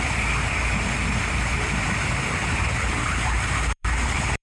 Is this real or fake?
fake